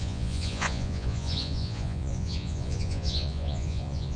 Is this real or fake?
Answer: fake